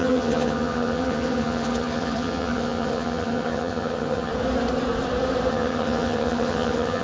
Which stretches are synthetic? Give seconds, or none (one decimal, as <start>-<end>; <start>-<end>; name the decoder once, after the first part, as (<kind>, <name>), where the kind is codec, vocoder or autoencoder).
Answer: 0.0-4.3 (vocoder, HiFi-GAN); 5.5-7.0